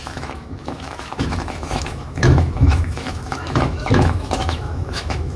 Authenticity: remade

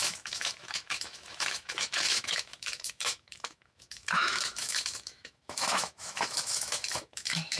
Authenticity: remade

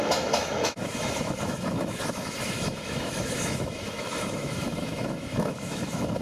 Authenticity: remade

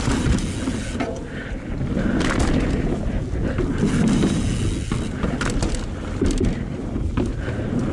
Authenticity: recorded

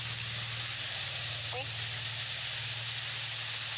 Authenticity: recorded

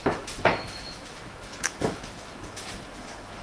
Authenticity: remade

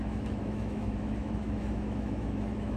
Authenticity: remade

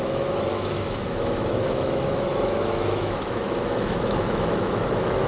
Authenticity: remade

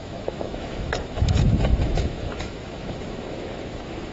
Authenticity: remade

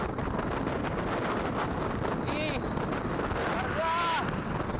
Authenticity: recorded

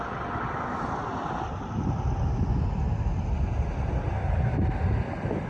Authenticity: recorded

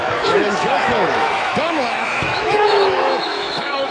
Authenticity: remade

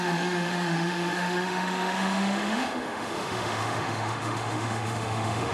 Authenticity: remade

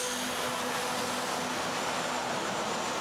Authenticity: recorded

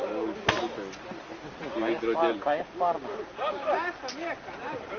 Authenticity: recorded